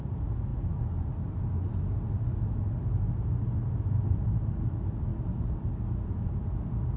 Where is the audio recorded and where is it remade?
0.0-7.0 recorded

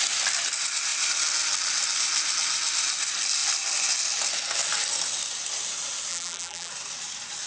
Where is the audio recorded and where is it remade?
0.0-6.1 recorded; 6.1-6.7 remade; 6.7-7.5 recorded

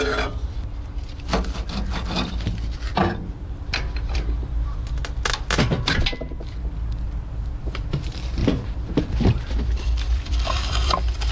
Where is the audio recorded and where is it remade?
0.0-5.0 remade; 5.0-7.6 recorded; 7.6-11.3 remade

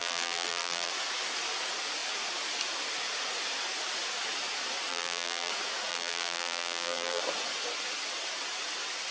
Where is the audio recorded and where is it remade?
0.0-0.9 remade; 0.9-4.9 recorded; 4.9-5.5 remade; 5.5-5.9 recorded; 5.9-7.2 remade; 7.2-9.1 recorded